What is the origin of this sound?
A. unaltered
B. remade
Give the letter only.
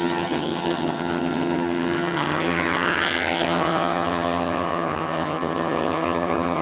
B